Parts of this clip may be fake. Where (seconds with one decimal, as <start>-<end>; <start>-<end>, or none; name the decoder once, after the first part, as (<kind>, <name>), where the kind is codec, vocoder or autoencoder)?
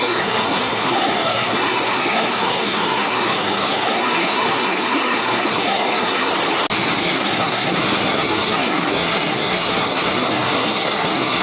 0.0-6.3 (codec, SNAC); 7.0-11.4